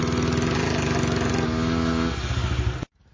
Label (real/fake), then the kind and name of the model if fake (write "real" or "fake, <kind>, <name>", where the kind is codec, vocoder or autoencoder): real